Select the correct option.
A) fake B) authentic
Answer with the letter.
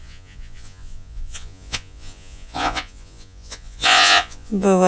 A